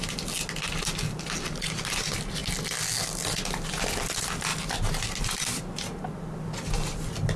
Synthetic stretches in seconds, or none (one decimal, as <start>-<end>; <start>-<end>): none